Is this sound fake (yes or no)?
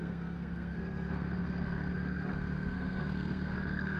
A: yes